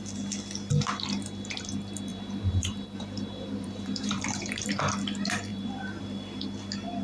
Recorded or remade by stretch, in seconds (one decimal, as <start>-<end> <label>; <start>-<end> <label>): 0.0-2.1 recorded; 2.1-4.8 remade; 4.8-5.5 recorded; 5.5-6.0 remade; 6.0-7.0 recorded